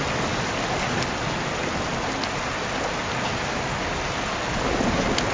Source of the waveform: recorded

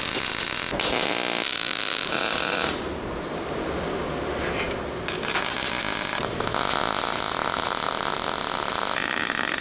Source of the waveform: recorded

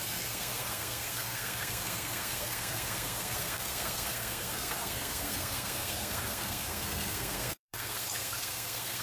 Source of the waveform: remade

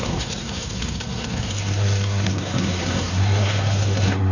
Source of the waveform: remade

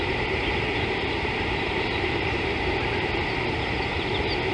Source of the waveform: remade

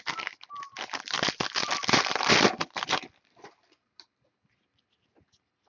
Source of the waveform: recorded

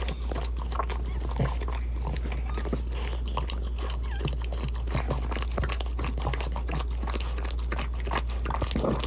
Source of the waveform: recorded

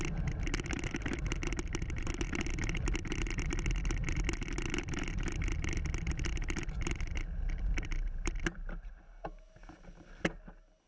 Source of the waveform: recorded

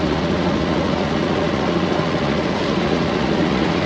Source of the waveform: remade